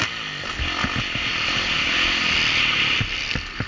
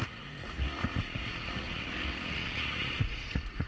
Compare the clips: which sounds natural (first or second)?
first